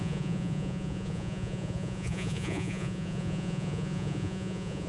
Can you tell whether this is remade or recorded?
remade